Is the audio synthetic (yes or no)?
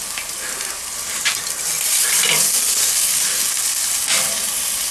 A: no